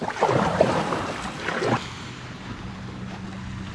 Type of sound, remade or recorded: recorded